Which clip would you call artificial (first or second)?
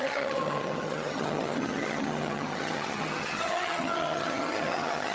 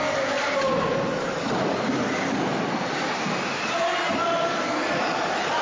first